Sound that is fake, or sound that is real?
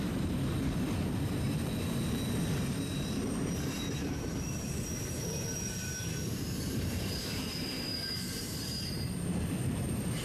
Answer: fake